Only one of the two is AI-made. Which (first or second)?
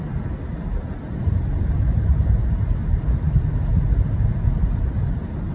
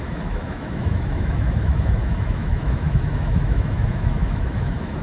second